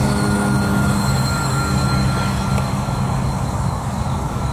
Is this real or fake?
fake